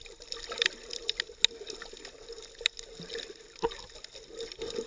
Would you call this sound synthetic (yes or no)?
no